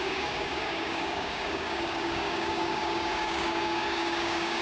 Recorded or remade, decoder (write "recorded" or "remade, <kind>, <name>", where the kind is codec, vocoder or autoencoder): remade, codec, DAC